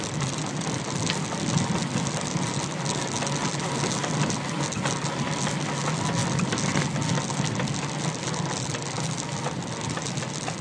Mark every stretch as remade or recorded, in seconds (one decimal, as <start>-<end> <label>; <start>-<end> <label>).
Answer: 0.0-10.6 recorded